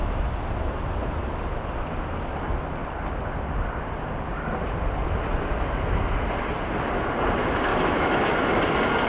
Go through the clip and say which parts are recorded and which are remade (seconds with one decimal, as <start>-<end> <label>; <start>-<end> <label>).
0.0-7.7 recorded; 7.7-8.3 remade; 8.3-9.1 recorded